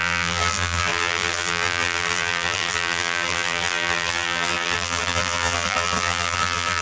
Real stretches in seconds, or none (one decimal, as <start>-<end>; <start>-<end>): none